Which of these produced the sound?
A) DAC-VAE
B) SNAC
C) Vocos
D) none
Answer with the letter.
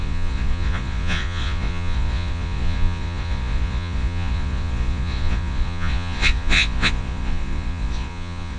C